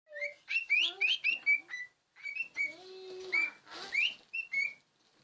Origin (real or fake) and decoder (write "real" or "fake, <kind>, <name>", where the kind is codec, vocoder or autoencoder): real